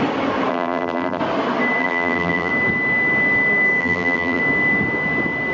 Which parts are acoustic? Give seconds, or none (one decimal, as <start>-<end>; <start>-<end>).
0.0-0.5; 1.2-1.8; 2.5-3.8; 4.4-5.5